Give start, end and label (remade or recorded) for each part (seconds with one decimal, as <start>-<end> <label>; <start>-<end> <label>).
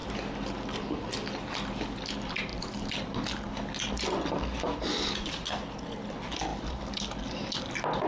0.0-8.1 recorded